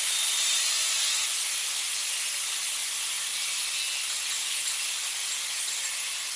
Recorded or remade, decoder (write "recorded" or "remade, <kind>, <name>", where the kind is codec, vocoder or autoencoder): recorded